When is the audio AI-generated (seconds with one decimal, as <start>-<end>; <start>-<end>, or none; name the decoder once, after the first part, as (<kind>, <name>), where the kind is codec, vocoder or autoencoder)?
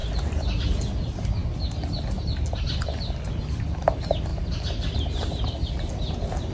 none